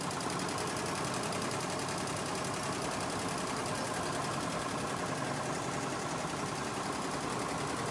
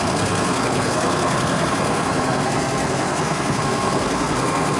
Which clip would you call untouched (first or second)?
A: first